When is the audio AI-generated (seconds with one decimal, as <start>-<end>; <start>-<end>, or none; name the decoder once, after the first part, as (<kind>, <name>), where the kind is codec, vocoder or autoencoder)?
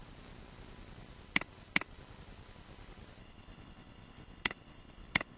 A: 3.2-5.4 (codec, HILCodec)